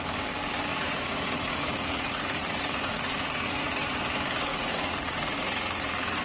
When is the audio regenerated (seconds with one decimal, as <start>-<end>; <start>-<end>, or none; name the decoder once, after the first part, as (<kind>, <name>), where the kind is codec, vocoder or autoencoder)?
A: 0.7-3.9 (vocoder, Vocos); 4.5-6.2